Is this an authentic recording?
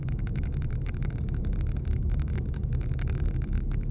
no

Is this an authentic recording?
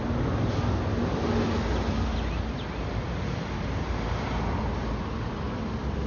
yes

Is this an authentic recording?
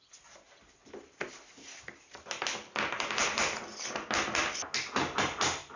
yes